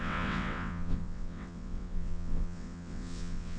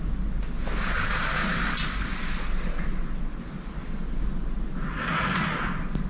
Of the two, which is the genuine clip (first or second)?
second